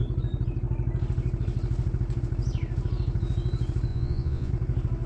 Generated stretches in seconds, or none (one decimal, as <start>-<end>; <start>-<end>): 3.9-4.5